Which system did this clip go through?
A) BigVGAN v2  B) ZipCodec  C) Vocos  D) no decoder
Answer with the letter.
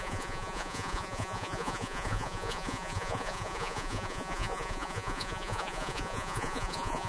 C